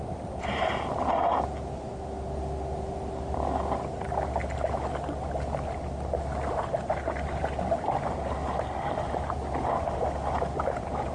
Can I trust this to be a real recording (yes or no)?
yes